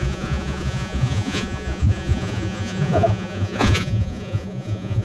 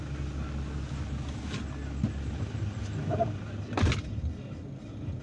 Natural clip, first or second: second